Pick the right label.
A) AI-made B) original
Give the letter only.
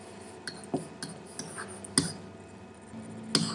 B